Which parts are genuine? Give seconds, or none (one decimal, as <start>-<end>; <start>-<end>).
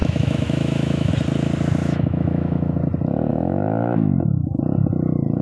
1.1-1.8; 2.8-3.3; 4.6-5.4